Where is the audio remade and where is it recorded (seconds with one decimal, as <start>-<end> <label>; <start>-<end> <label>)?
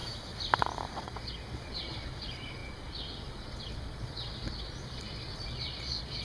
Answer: 0.0-0.9 recorded; 0.9-6.2 remade